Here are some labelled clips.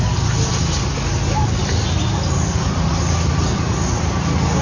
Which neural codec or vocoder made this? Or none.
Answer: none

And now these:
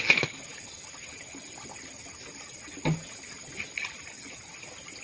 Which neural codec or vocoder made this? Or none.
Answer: none